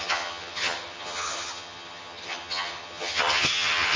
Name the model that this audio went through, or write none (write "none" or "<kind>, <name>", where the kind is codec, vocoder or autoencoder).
vocoder, HiFi-GAN